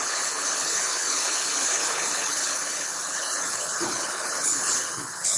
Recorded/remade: remade